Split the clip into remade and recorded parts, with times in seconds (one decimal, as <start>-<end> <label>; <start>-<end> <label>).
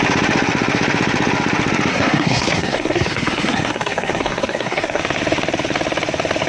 0.0-1.9 recorded; 1.9-5.0 remade; 5.0-6.5 recorded